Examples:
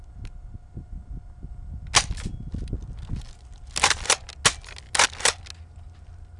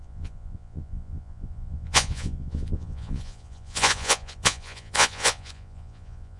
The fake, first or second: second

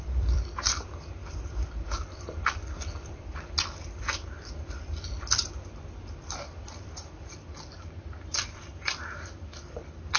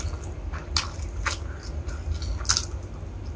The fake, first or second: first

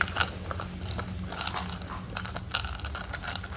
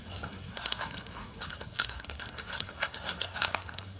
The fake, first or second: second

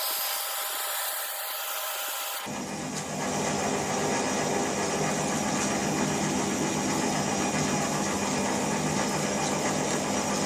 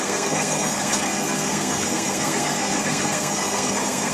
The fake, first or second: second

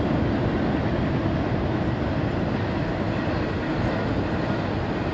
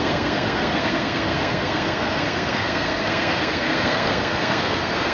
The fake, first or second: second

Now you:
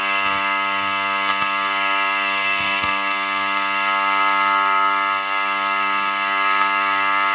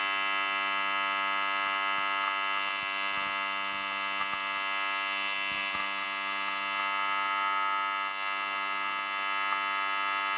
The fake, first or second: first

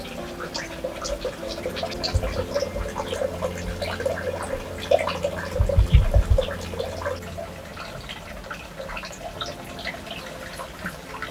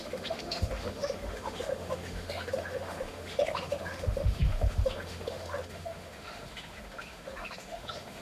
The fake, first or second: second